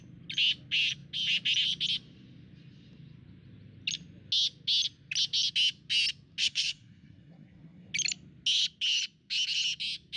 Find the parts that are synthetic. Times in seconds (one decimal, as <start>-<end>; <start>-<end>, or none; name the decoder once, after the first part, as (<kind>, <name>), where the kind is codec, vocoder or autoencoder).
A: 6.4-7.9 (codec, SNAC)